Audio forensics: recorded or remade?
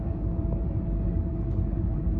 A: remade